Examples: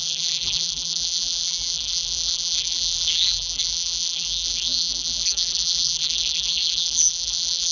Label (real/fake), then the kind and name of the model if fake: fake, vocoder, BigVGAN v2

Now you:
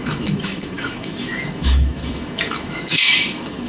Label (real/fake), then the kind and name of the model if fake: fake, autoencoder, DAC-VAE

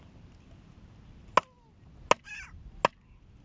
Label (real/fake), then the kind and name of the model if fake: real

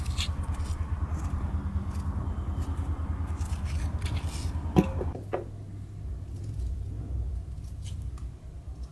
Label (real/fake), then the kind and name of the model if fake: real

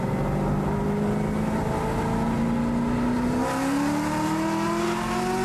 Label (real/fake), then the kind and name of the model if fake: real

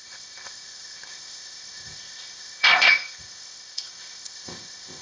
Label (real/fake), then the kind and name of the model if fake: fake, codec, ZipCodec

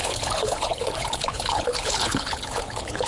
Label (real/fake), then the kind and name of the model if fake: fake, codec, HILCodec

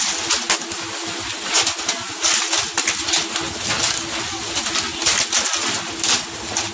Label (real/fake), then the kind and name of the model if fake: real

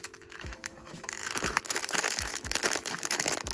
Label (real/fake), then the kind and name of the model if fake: fake, autoencoder, DAC-VAE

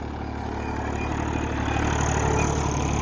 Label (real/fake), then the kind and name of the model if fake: real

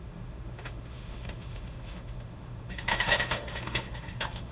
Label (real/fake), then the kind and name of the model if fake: fake, autoencoder, DAC-VAE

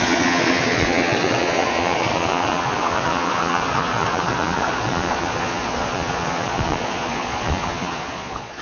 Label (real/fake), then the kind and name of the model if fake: fake, vocoder, Vocos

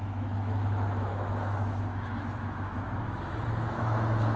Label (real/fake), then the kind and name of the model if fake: fake, autoencoder, DAC-VAE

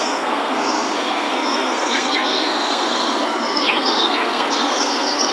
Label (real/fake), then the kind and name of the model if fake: fake, codec, SNAC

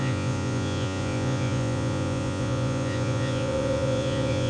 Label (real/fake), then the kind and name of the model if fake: fake, vocoder, Vocos